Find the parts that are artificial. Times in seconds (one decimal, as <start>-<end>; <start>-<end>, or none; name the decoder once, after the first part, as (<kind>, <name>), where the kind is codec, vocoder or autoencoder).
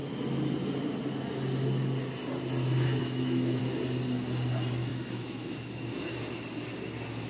3.0-3.6 (autoencoder, DAC-VAE); 4.9-5.8